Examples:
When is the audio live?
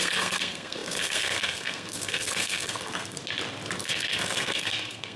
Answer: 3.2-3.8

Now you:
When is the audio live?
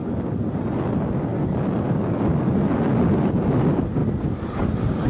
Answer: 0.0-5.1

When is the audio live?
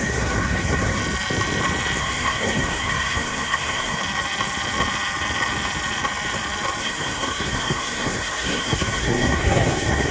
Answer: 1.0-2.0; 4.0-6.8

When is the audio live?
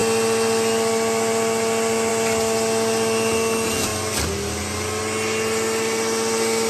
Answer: 0.0-6.7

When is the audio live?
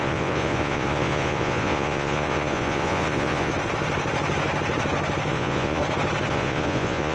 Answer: 3.5-5.3; 5.8-6.3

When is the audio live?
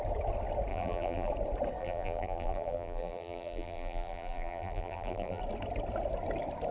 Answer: 0.0-0.7; 1.3-1.8; 5.4-6.7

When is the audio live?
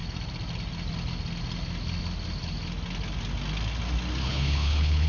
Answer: 0.0-4.2